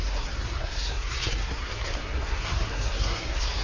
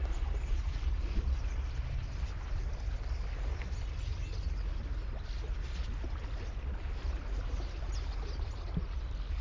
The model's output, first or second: first